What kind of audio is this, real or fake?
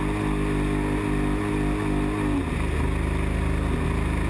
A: real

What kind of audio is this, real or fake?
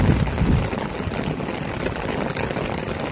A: real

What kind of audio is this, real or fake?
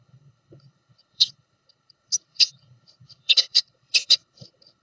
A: fake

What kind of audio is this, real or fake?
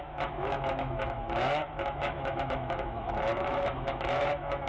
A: fake